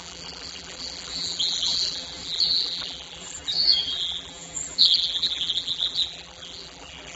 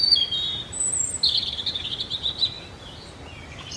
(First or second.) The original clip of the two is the second